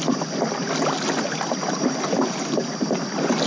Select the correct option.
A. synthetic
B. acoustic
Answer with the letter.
B